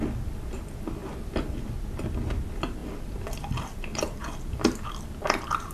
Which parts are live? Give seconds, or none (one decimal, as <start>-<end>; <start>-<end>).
0.0-2.8; 4.9-5.7